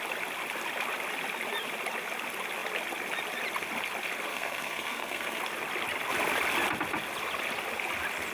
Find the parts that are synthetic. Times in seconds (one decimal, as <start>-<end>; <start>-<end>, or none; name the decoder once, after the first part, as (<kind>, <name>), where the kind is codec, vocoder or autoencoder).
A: 4.3-5.4 (codec, SNAC)